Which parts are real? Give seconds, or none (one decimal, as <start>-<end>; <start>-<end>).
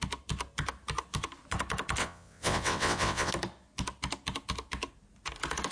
0.0-2.0; 3.3-5.7